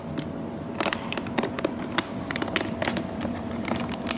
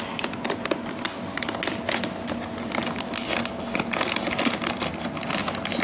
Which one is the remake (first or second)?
first